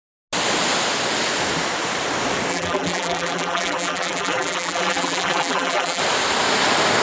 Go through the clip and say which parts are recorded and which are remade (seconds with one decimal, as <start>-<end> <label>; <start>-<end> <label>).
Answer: 0.0-2.5 recorded; 2.5-6.0 remade; 6.0-7.0 recorded